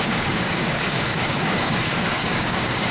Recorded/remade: remade